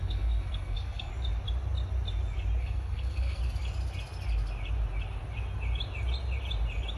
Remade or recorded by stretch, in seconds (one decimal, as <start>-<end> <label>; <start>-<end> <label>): 0.0-1.1 remade; 1.1-2.6 recorded; 2.6-3.4 remade; 3.4-7.0 recorded

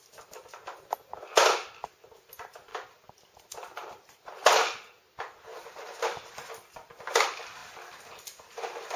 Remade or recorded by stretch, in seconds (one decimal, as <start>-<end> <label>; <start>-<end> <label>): 0.0-2.7 recorded; 2.7-3.5 remade; 3.5-5.5 recorded; 5.5-6.5 remade; 6.5-9.0 recorded

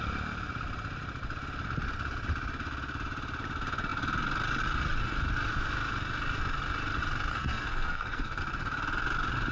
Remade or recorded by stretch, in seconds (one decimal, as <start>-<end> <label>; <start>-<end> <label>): 0.0-7.3 recorded; 7.3-8.4 remade; 8.4-9.5 recorded